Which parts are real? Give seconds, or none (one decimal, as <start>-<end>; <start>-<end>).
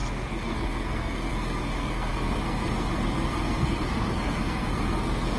none